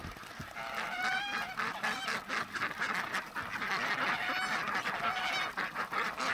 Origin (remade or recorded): recorded